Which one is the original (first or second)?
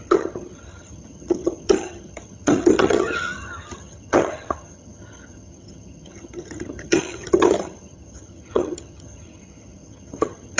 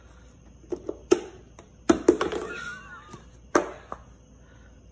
second